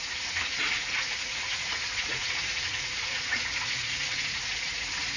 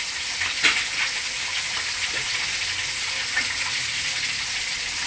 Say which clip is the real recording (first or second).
second